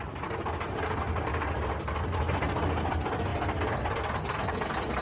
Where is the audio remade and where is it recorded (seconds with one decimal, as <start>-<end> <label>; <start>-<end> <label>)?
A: 0.0-5.0 recorded